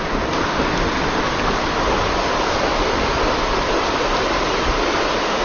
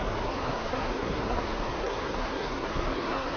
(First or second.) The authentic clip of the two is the first